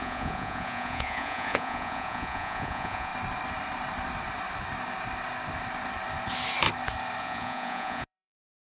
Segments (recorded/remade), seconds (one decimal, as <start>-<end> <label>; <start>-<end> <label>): 0.0-3.1 remade; 3.1-7.2 recorded; 7.2-8.6 remade